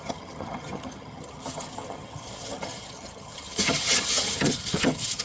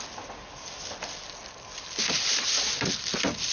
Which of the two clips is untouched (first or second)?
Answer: second